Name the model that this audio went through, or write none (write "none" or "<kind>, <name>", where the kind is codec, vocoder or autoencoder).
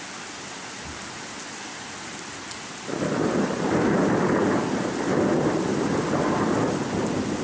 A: none